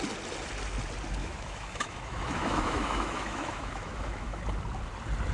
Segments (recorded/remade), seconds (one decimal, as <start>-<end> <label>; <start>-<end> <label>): 0.0-1.2 recorded; 1.2-4.4 remade; 4.4-5.3 recorded